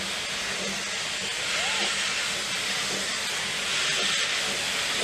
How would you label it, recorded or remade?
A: recorded